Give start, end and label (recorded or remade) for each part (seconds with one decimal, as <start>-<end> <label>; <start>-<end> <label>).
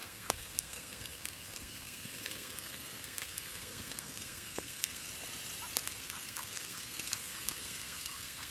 0.0-5.1 remade; 5.1-5.9 recorded; 5.9-8.5 remade